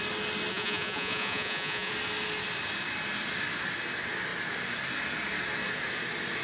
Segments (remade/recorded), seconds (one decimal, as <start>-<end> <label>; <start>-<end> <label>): 0.0-0.5 recorded; 0.5-1.9 remade; 1.9-6.4 recorded